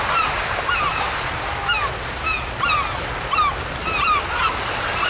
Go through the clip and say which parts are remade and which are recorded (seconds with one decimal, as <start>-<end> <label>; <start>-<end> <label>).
0.0-1.5 remade; 1.5-4.6 recorded; 4.6-5.1 remade